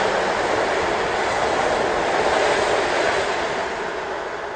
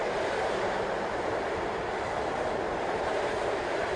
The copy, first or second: second